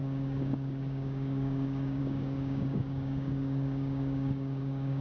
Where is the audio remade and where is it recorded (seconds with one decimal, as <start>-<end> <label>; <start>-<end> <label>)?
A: 0.0-5.0 remade